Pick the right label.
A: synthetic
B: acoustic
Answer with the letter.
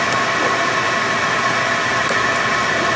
B